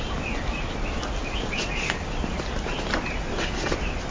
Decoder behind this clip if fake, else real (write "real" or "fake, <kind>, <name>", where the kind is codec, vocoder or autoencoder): real